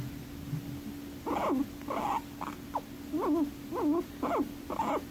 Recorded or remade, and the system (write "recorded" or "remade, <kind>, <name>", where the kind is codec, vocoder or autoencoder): recorded